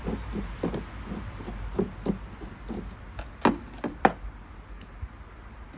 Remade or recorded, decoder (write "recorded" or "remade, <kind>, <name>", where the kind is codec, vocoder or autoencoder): recorded